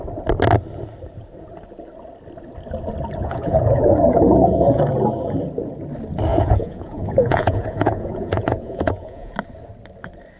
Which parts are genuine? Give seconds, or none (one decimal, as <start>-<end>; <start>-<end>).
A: 0.0-3.2; 4.8-6.3; 9.3-10.4